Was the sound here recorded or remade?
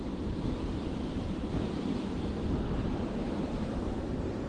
recorded